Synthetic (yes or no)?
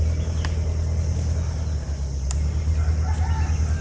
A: no